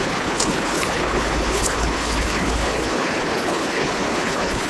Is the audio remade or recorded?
remade